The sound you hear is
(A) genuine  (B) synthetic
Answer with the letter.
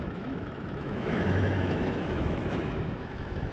B